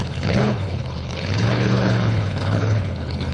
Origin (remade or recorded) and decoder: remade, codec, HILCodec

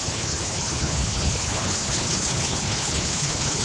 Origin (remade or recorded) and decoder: remade, codec, HILCodec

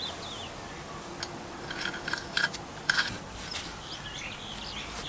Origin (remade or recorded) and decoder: recorded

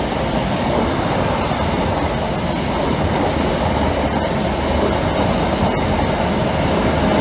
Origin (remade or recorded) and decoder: recorded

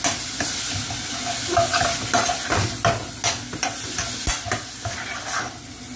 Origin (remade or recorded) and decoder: recorded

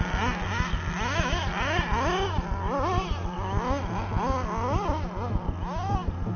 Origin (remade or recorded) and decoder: recorded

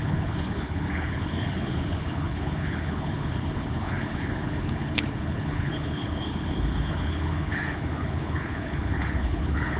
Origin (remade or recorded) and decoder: remade, codec, HILCodec